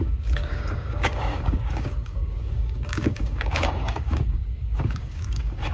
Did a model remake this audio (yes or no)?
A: yes